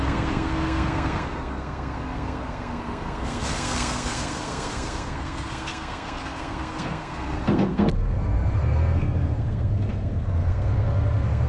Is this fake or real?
fake